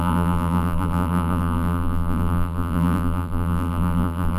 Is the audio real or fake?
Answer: fake